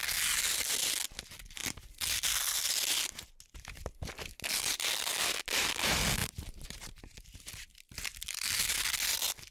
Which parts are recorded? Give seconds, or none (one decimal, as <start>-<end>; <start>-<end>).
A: 0.0-6.2; 7.5-9.5